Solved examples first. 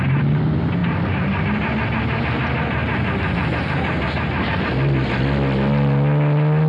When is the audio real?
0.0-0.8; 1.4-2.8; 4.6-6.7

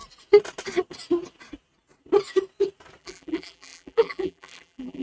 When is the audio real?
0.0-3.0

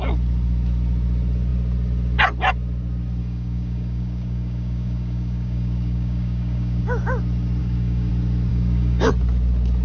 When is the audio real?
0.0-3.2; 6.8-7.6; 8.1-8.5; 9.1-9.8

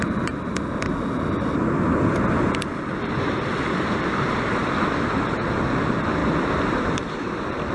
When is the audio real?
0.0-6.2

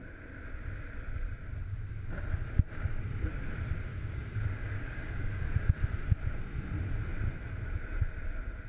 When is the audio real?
0.0-3.9; 5.5-8.7

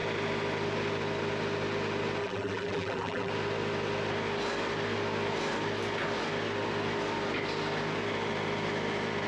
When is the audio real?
0.0-2.2; 3.3-9.3

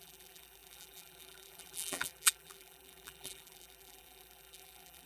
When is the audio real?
none

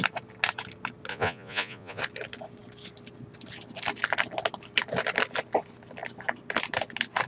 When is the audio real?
0.0-1.1; 2.0-7.3